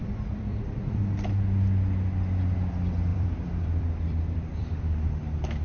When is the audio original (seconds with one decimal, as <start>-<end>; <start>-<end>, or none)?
0.6-3.1; 5.1-5.6